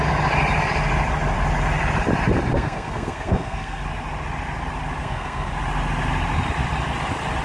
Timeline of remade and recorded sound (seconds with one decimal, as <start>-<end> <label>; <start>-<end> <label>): 0.0-2.5 recorded; 2.5-3.8 remade; 3.8-5.0 recorded; 5.0-5.5 remade; 5.5-7.4 recorded